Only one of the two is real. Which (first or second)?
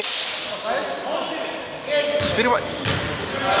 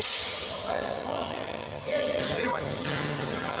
first